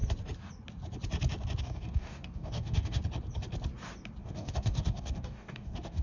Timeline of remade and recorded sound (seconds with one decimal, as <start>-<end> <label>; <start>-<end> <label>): 0.0-1.6 recorded; 1.6-3.0 remade; 3.0-4.2 recorded; 4.2-6.0 remade